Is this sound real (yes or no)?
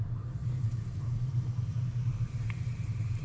no